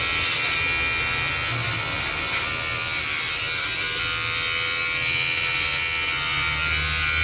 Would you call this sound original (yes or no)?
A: yes